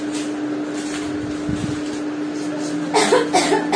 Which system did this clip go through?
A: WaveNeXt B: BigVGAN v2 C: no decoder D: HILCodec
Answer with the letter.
C